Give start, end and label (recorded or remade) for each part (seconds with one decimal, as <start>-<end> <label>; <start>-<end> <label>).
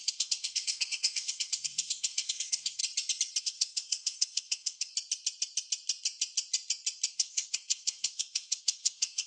0.0-2.8 remade; 2.8-3.4 recorded; 3.4-4.9 remade; 4.9-7.1 recorded; 7.1-9.3 remade